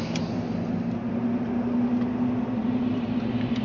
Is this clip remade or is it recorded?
recorded